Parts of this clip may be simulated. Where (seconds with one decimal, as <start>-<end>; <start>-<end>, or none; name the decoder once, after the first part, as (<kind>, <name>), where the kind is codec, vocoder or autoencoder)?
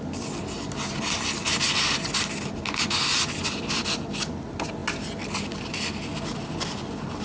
none